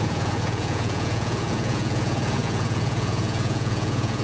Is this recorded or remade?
remade